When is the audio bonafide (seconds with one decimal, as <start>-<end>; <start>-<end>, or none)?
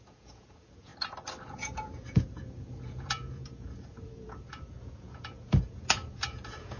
0.9-1.5